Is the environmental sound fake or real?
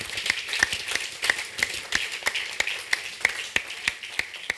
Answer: real